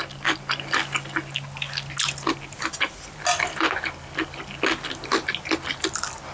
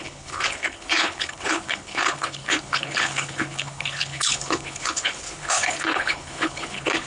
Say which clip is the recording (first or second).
first